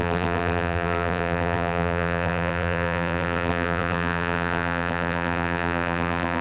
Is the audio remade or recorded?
remade